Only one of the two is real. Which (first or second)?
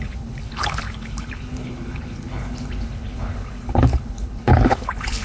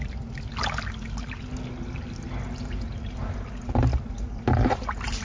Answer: second